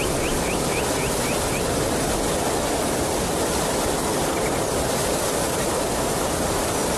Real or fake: real